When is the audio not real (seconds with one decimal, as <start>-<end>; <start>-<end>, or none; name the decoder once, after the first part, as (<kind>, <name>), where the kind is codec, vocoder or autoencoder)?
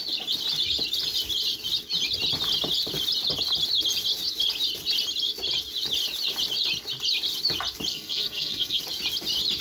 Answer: 7.9-8.8 (codec, SNAC)